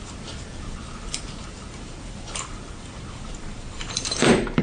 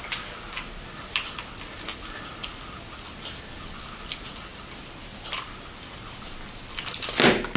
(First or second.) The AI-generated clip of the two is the first